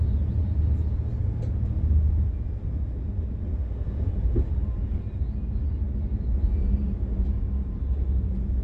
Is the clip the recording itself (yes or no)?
yes